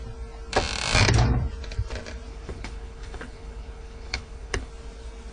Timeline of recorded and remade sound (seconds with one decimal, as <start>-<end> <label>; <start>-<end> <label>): 0.0-2.3 recorded; 2.3-4.7 remade; 4.7-5.3 recorded